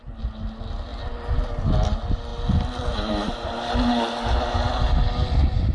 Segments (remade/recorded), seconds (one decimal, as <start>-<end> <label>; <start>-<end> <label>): 0.0-5.7 recorded